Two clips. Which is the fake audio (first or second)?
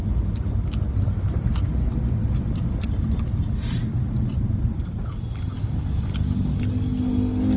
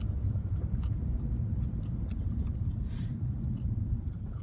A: second